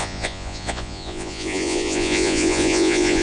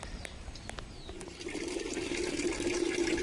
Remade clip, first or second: first